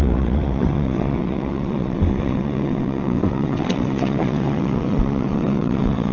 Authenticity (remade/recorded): remade